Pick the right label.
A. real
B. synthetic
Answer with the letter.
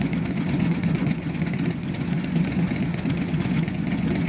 B